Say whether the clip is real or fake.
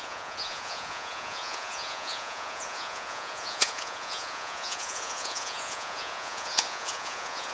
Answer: fake